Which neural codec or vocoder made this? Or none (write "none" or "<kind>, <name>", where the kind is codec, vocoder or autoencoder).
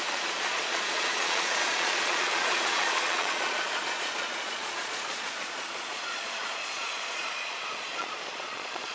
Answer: vocoder, Vocos